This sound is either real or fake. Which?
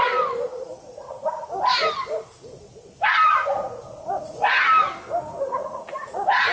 real